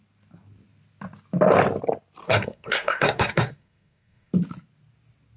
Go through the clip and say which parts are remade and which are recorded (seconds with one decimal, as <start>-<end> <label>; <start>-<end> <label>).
0.0-2.2 recorded; 2.2-4.3 remade; 4.3-5.4 recorded